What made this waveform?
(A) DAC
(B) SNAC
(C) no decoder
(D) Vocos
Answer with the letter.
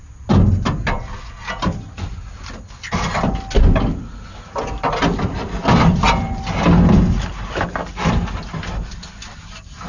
C